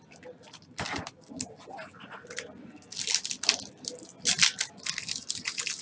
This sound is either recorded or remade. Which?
recorded